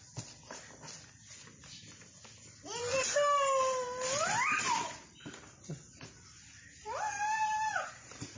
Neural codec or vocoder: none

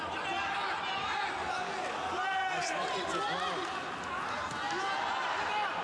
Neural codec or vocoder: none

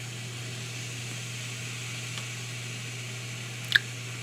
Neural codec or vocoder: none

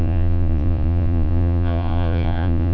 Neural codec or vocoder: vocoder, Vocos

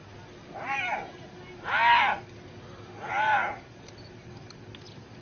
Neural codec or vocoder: none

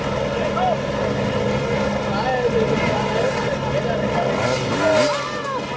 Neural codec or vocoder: none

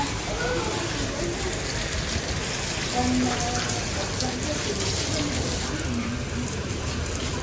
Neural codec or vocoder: none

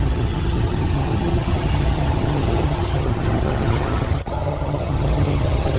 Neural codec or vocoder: vocoder, HiFi-GAN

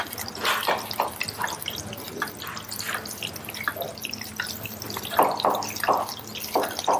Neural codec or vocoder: none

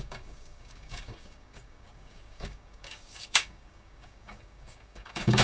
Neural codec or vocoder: codec, DAC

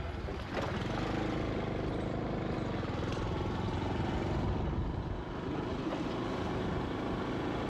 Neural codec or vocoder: none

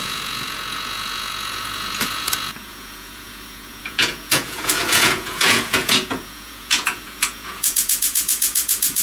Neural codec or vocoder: vocoder, Vocos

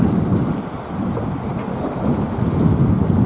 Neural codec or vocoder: none